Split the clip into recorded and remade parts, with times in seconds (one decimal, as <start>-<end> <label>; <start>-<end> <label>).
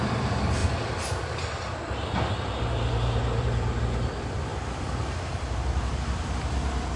0.0-0.6 remade; 0.6-3.8 recorded; 3.8-7.0 remade